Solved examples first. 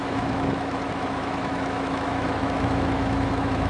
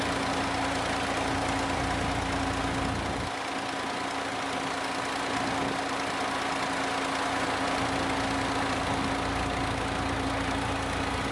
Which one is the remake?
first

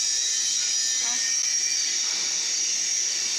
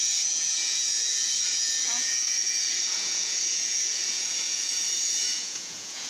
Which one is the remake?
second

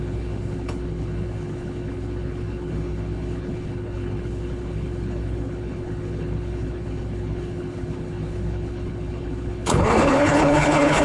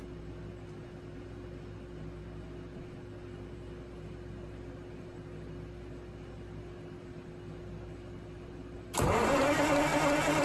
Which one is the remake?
first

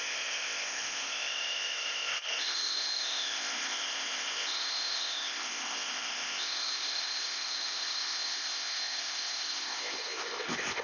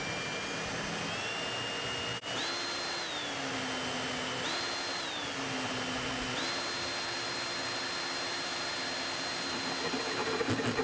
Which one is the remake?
first